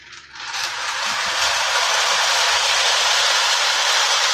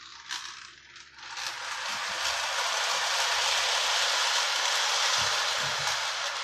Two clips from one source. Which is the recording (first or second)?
second